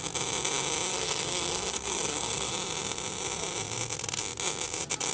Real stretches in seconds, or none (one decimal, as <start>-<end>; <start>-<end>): 0.0-0.9; 2.5-5.1